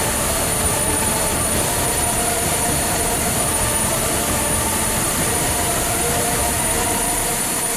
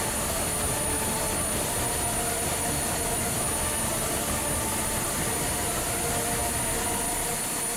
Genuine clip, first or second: second